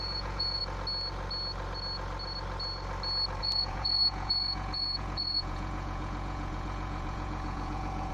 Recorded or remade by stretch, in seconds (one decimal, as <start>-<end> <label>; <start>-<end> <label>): 0.0-0.6 remade; 0.6-3.4 recorded; 3.4-8.1 remade